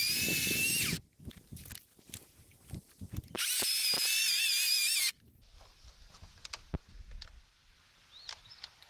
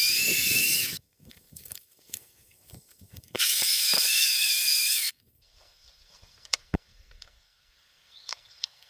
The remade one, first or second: second